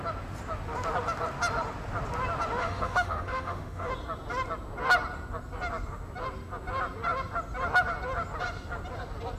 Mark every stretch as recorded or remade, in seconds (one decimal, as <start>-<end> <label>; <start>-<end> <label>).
0.0-2.6 recorded; 2.6-3.9 remade; 3.9-9.4 recorded